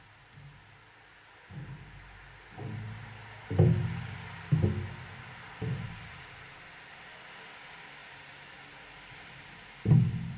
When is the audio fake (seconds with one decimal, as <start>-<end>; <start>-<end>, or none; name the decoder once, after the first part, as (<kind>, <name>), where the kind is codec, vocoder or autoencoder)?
none